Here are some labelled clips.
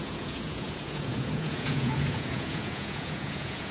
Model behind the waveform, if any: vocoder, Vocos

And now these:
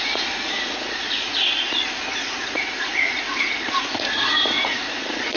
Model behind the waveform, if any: vocoder, Vocos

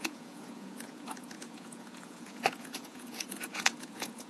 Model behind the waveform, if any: vocoder, Vocos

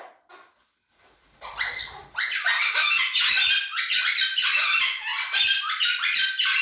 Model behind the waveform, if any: none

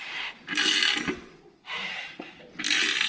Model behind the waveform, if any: none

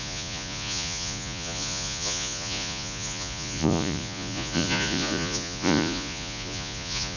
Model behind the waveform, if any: vocoder, Vocos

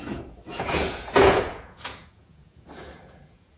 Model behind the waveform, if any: vocoder, Vocos